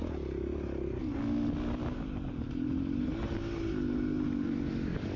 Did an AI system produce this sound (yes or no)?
no